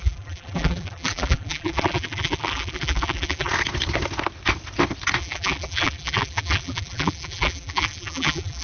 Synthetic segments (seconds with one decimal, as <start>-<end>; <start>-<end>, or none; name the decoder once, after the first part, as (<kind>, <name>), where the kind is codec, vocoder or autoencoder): 0.0-3.5 (vocoder, BigVGAN v2); 5.2-8.6

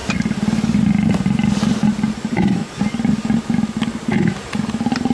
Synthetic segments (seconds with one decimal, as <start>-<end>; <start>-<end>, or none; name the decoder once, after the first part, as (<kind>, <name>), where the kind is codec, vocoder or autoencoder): 2.1-2.6 (vocoder, BigVGAN v2); 3.9-5.1

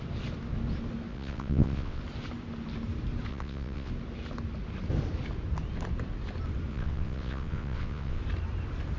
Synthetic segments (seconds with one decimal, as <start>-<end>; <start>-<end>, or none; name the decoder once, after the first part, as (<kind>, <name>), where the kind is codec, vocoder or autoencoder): 1.1-2.0 (vocoder, WaveNeXt); 3.3-3.9; 6.7-8.2

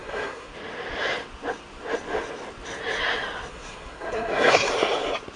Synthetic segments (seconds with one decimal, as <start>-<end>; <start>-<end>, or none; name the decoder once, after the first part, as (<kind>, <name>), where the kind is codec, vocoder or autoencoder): 0.0-0.5 (codec, SNAC); 3.5-4.7

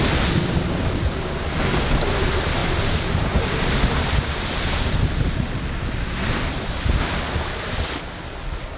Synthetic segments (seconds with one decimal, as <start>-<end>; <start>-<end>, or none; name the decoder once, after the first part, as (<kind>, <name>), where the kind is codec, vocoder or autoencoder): 2.6-4.4 (vocoder, BigVGAN v2)

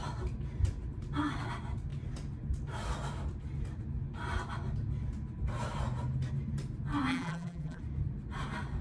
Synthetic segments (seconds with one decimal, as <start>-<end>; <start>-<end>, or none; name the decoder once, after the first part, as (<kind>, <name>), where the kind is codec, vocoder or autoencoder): 7.1-7.8 (vocoder, BigVGAN v2)

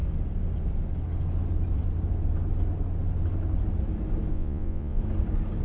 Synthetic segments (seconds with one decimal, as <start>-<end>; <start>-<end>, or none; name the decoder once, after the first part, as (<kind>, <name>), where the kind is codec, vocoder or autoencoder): 4.3-5.0 (vocoder, Vocos)

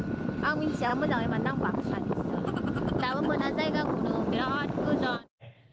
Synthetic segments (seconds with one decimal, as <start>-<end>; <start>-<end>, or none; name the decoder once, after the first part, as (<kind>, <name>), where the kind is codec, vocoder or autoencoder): none